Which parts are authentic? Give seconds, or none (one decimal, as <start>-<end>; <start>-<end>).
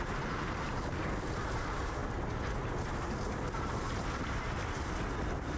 0.0-5.6